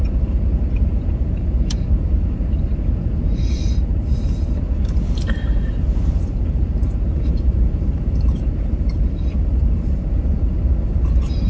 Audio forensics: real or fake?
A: fake